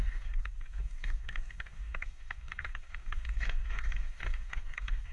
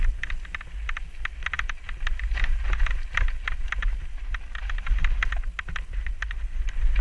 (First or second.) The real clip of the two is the second